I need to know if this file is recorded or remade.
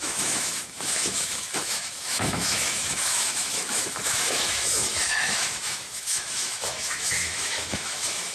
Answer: remade